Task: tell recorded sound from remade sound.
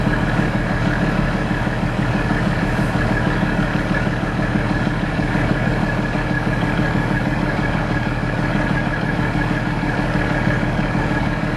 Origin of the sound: remade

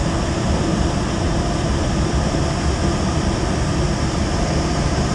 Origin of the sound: recorded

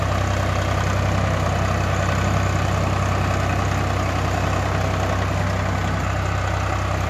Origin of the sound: recorded